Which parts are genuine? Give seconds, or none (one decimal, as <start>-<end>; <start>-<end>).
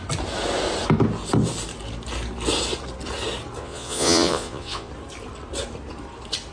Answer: 0.0-3.6; 4.9-6.5